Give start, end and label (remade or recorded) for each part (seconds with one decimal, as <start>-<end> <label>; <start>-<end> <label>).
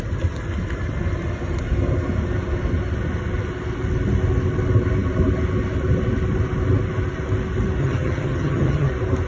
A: 0.0-7.8 recorded; 7.8-8.9 remade; 8.9-9.3 recorded